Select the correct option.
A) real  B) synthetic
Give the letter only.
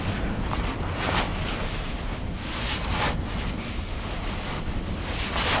A